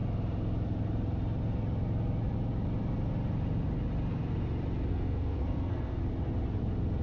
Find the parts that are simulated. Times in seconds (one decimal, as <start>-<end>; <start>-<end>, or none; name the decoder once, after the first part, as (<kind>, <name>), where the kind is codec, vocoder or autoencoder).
4.9-6.0 (codec, SNAC)